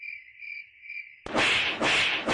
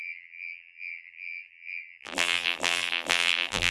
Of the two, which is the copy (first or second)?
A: second